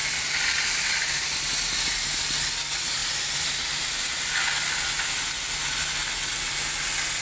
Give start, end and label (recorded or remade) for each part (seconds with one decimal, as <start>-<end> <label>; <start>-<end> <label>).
0.0-0.9 remade; 0.9-7.2 recorded

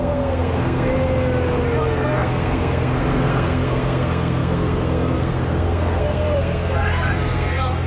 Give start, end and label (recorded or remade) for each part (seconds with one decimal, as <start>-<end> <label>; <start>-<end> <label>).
0.0-0.9 remade; 0.9-1.8 recorded; 1.8-7.9 remade

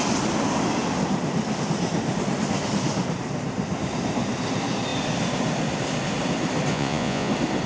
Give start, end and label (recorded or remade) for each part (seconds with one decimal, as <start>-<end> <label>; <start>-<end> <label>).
0.0-6.7 recorded; 6.7-7.3 remade; 7.3-7.7 recorded

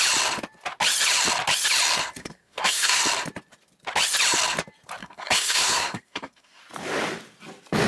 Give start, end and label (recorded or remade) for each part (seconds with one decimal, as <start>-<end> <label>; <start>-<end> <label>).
0.0-2.2 recorded; 2.2-3.0 remade; 3.0-5.0 recorded; 5.0-6.6 remade; 6.6-7.9 recorded

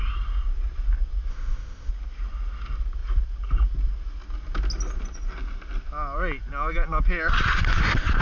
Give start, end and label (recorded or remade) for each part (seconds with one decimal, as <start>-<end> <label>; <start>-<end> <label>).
0.0-1.3 recorded; 1.3-1.9 remade; 1.9-8.2 recorded

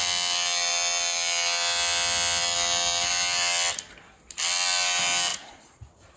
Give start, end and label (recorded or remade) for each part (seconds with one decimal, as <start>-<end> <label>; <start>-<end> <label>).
0.0-5.3 recorded; 5.3-6.2 remade